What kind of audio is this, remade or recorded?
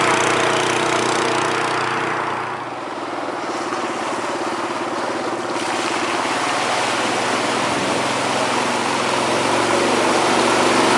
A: recorded